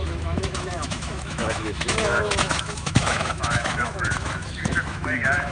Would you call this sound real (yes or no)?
no